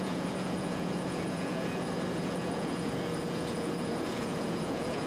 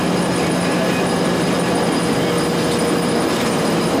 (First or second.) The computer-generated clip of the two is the first